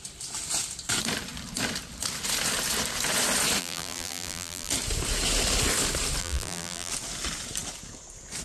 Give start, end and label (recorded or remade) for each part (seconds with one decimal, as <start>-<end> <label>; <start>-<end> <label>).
0.0-3.6 recorded; 3.6-4.7 remade; 4.7-6.2 recorded; 6.2-6.9 remade; 6.9-8.4 recorded